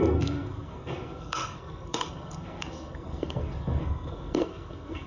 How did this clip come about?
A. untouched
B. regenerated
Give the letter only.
B